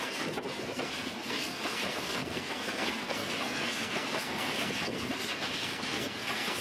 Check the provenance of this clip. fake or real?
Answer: fake